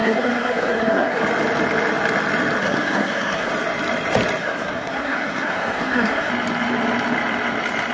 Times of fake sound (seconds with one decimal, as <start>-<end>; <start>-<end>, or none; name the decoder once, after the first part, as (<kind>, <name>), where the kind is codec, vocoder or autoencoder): 0.0-1.2 (codec, SNAC); 2.6-3.5; 4.4-6.3